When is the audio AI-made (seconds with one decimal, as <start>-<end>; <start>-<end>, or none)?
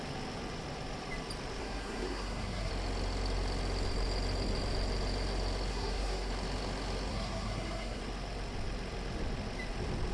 1.6-2.7; 5.7-6.3; 7.1-8.0